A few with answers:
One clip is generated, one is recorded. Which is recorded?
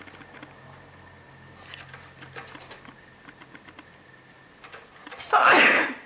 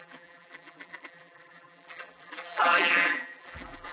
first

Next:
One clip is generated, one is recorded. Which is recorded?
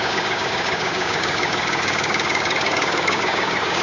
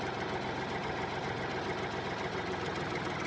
second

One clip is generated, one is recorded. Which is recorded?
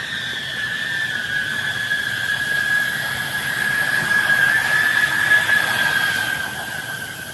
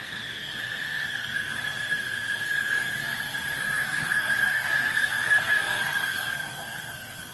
first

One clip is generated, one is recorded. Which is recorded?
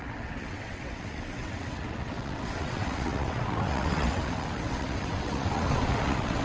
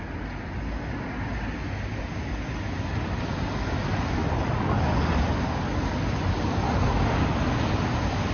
second